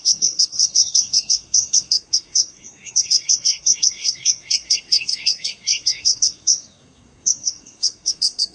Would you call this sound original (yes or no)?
no